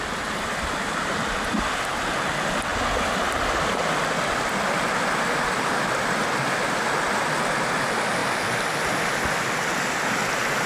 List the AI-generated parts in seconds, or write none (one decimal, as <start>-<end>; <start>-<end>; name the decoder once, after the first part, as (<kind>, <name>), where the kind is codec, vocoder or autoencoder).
none